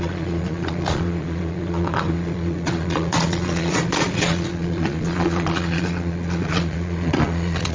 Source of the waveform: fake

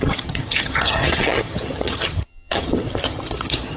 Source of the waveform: fake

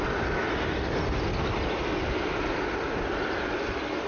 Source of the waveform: real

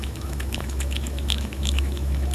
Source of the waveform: fake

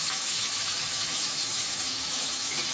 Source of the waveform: fake